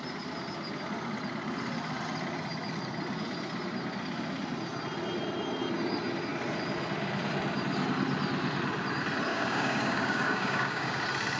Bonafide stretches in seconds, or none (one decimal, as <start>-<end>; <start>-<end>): 0.0-9.3; 11.0-11.4